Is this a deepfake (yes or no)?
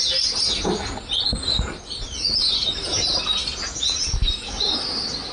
no